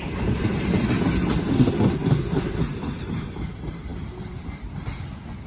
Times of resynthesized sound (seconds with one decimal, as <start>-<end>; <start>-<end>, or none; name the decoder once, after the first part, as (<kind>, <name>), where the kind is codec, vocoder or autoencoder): 1.5-2.6 (codec, SNAC)